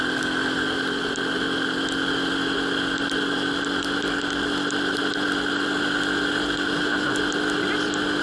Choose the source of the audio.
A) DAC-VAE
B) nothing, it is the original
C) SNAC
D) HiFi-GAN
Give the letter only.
B